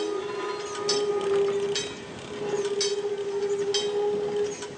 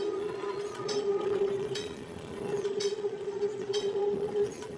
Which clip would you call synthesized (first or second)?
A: second